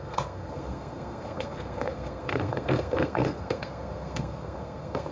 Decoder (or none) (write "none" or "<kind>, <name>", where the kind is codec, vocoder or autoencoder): codec, SNAC